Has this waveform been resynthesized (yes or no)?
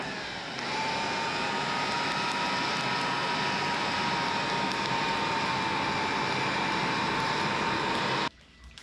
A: no